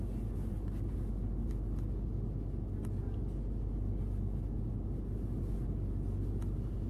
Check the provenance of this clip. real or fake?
real